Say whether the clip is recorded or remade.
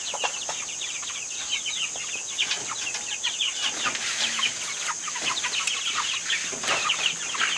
recorded